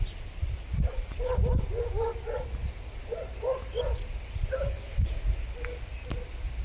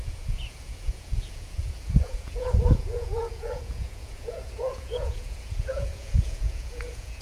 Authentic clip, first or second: first